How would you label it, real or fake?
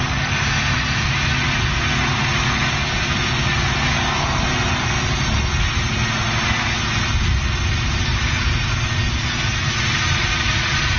real